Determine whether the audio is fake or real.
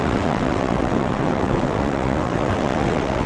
fake